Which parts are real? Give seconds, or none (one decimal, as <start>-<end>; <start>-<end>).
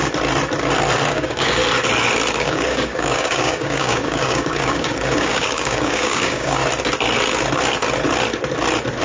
0.0-1.1; 1.6-2.4; 6.6-9.0